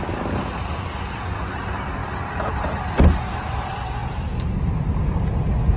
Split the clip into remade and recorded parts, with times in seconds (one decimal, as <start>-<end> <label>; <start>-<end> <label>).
0.0-5.8 recorded